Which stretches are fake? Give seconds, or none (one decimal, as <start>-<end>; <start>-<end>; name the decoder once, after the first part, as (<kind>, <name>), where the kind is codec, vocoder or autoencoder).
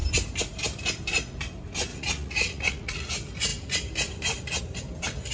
1.9-3.1 (vocoder, Vocos)